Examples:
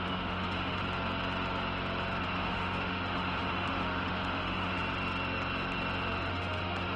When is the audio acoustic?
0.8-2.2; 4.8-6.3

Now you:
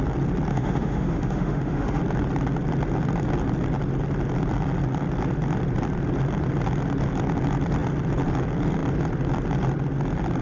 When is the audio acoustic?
0.0-0.5; 2.0-10.4